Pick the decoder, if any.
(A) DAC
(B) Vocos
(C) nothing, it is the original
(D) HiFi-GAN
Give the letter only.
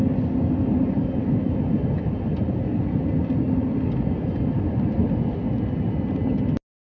C